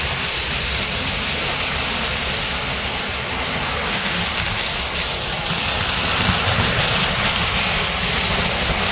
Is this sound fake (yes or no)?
no